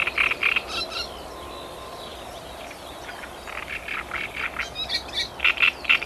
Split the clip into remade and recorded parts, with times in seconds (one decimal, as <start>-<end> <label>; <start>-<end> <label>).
0.0-6.1 recorded